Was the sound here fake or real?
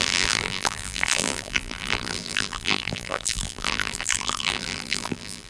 fake